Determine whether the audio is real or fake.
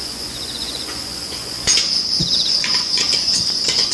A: fake